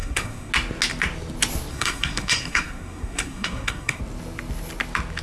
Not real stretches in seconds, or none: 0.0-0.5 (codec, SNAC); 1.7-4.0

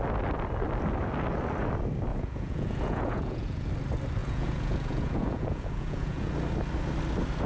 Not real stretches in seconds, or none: 2.1-3.7 (vocoder, Vocos); 4.2-6.3

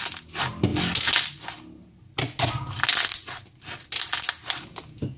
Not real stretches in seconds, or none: none